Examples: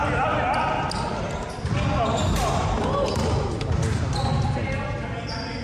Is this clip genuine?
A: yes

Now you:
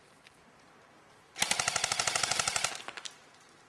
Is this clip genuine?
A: yes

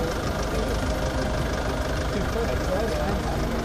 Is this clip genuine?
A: yes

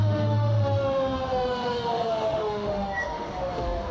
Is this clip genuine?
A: no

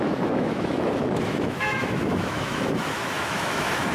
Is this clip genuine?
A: no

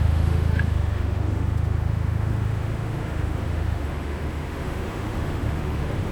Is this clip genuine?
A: no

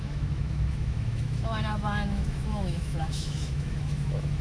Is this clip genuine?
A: no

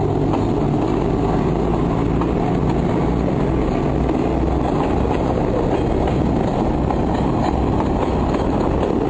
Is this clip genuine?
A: yes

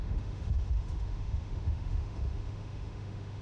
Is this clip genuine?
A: no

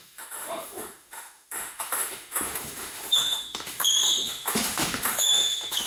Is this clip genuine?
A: no